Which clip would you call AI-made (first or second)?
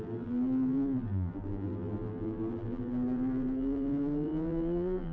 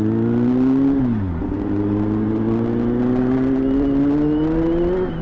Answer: first